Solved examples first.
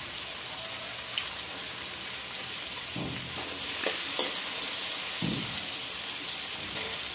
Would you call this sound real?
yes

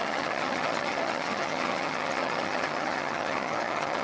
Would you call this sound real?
no